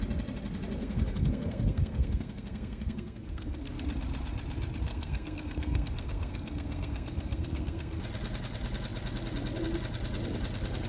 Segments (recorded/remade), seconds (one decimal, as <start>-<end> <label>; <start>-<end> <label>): 0.0-0.8 recorded; 0.8-3.8 remade; 3.8-4.9 recorded; 4.9-8.0 remade; 8.0-10.9 recorded